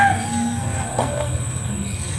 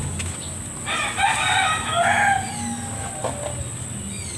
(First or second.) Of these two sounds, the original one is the second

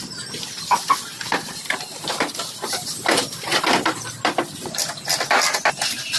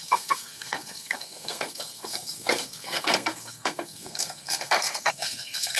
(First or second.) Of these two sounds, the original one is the first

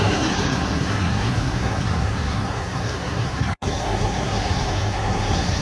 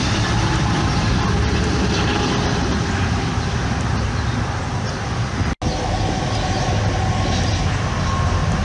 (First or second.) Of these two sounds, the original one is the second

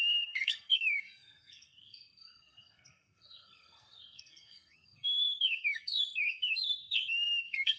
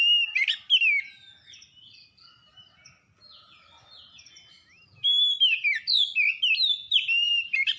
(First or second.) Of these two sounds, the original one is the second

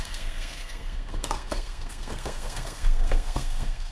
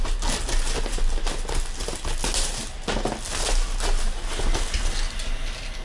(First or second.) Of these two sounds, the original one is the second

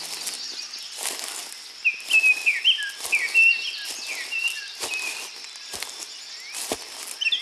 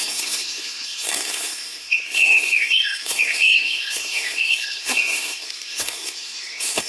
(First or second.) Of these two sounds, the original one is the first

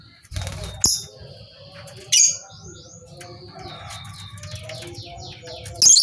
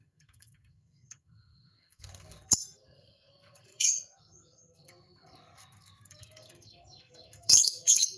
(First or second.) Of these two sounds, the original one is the first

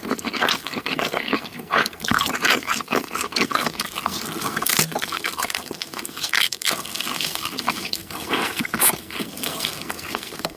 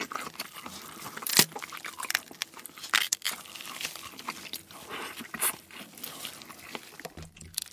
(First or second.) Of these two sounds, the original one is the second